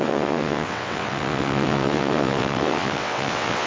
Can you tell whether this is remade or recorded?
remade